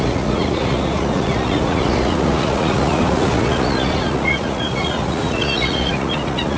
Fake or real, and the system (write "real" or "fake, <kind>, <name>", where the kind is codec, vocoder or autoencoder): fake, vocoder, Vocos